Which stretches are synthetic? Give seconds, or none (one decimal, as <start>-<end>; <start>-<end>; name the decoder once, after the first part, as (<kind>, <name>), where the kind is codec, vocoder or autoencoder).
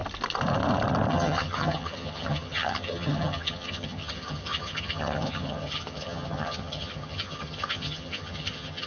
1.1-8.9 (vocoder, HiFi-GAN)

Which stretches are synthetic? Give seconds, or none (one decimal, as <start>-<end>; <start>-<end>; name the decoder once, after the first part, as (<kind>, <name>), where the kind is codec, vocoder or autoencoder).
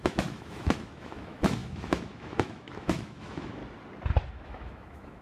0.0-3.6 (autoencoder, DAC-VAE); 4.3-5.2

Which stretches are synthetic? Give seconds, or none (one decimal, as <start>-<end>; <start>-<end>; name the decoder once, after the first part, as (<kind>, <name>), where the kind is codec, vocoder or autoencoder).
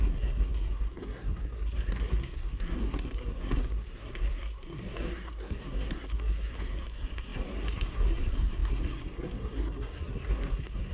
0.0-10.9 (codec, SNAC)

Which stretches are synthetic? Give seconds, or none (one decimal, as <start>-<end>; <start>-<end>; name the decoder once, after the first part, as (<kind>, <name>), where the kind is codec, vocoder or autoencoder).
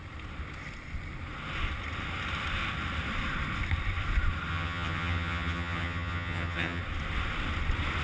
4.5-6.8 (vocoder, HiFi-GAN)